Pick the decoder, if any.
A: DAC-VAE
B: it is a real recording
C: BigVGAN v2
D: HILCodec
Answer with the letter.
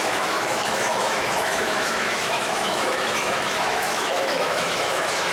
A